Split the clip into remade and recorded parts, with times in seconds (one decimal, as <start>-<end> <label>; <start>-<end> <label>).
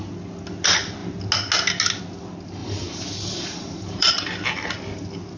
0.0-2.6 recorded; 2.6-4.1 remade; 4.1-5.4 recorded